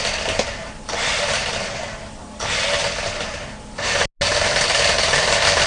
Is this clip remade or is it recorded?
recorded